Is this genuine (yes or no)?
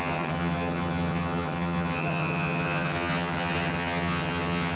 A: no